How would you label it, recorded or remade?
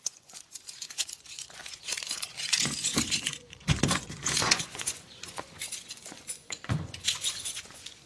remade